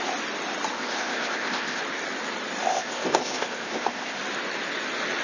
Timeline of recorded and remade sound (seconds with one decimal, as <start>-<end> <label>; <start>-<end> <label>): 0.0-0.7 recorded; 0.7-1.8 remade; 1.8-2.7 recorded; 2.7-4.2 remade; 4.2-5.2 recorded